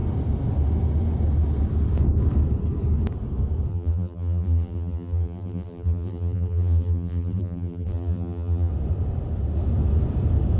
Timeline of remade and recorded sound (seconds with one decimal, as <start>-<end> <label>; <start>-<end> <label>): 0.0-3.7 recorded; 3.7-8.7 remade; 8.7-10.6 recorded

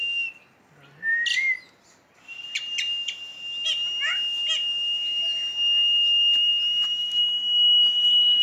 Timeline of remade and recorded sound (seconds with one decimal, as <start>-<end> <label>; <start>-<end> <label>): 0.0-8.4 recorded

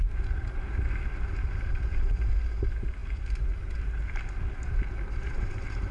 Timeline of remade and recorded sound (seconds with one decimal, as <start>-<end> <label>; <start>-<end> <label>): 0.0-5.9 remade

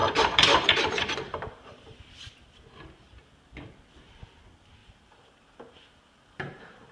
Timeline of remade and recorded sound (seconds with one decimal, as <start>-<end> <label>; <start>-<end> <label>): 0.0-2.2 remade; 2.2-4.8 recorded; 4.8-6.9 remade

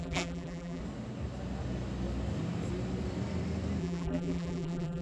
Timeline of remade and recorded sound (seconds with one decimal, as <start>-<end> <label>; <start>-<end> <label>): 0.0-0.8 remade; 0.8-3.8 recorded; 3.8-5.0 remade

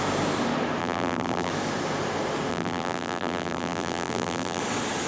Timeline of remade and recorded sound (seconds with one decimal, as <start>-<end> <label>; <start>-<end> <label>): 0.0-0.8 recorded; 0.8-1.5 remade; 1.5-2.5 recorded; 2.5-4.6 remade; 4.6-5.1 recorded

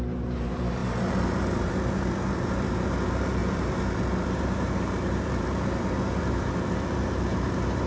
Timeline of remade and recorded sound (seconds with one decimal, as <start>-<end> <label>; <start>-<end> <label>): 0.0-7.9 remade

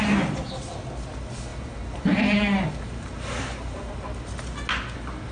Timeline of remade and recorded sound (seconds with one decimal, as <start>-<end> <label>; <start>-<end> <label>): 0.0-1.5 recorded; 1.5-3.9 remade; 3.9-5.3 recorded